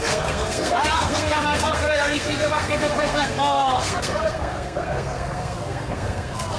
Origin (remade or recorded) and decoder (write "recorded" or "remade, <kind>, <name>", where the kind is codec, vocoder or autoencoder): remade, codec, SNAC